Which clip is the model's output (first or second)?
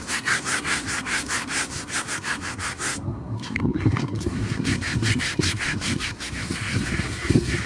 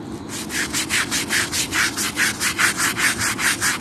first